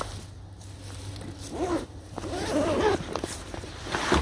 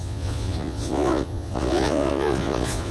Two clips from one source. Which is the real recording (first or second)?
first